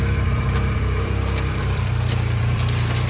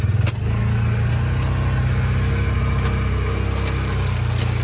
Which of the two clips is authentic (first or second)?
second